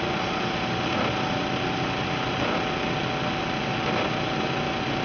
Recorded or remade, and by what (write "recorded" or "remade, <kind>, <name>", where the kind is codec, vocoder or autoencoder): recorded